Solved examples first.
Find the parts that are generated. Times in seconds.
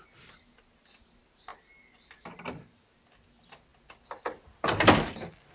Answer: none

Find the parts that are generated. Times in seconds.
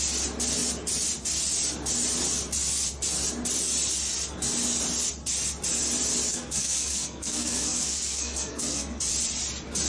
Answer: 6.3-9.0 (codec, SNAC)